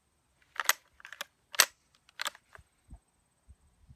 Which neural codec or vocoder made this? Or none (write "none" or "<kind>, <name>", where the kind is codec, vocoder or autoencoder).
none